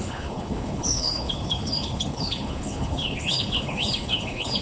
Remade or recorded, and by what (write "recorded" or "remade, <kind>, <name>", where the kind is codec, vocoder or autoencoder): remade, codec, HILCodec